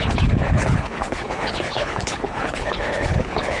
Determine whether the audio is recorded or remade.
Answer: remade